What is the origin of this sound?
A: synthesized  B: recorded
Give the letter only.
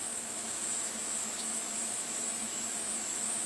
A